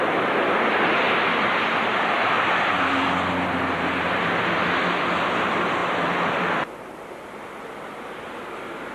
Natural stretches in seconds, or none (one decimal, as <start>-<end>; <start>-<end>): 0.0-8.9